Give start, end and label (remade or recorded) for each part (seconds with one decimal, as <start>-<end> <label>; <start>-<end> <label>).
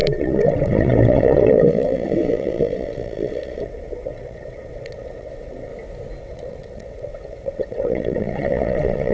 0.0-5.7 remade; 5.7-6.2 recorded; 6.2-9.1 remade